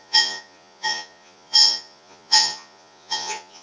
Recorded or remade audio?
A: remade